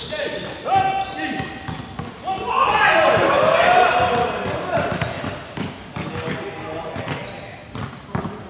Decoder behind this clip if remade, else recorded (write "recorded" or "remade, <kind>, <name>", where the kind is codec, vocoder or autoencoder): recorded